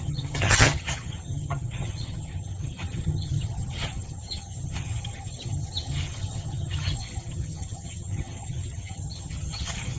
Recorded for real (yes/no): no